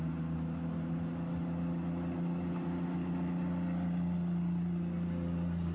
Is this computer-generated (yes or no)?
no